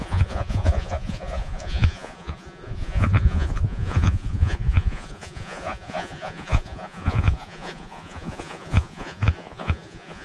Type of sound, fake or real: fake